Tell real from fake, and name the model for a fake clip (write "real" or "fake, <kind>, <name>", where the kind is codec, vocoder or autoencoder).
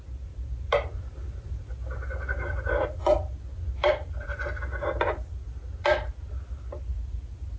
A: real